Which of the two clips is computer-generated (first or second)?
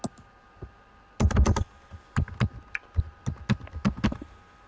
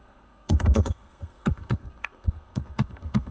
second